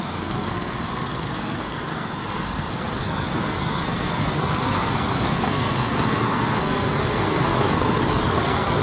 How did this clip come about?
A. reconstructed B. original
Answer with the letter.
A